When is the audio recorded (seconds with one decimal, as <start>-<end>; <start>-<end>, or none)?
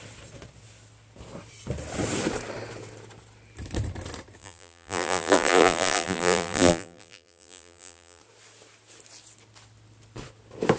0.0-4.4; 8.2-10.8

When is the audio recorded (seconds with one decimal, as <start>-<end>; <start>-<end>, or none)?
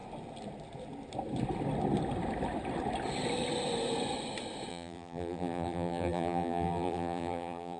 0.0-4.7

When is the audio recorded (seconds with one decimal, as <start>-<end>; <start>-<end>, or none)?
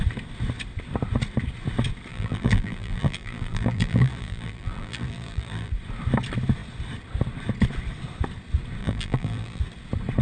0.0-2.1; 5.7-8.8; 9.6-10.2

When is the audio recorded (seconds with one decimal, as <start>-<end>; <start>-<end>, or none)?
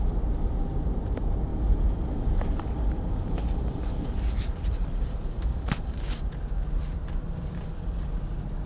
0.0-1.5; 6.3-7.0; 7.9-8.7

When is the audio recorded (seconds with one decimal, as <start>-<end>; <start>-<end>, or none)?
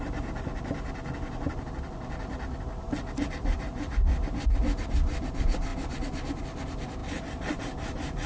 0.0-7.0; 7.6-8.3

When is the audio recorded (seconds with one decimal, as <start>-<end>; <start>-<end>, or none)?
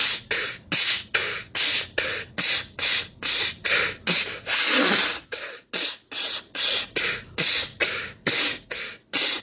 0.0-9.4